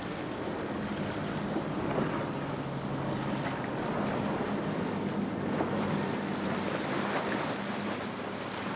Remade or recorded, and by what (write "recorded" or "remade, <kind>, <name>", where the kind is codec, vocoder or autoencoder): recorded